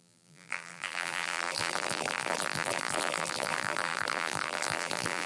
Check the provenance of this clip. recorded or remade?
remade